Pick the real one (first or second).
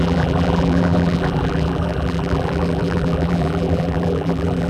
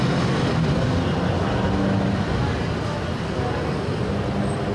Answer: second